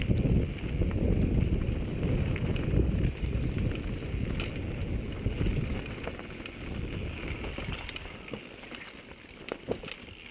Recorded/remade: recorded